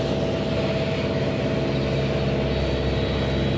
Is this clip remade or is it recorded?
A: recorded